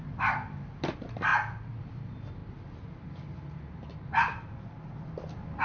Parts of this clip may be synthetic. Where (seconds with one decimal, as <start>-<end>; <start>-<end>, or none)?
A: 0.0-1.3; 1.8-2.4; 2.9-5.6